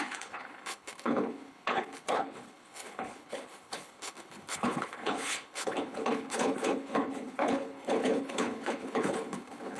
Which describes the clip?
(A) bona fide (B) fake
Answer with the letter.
B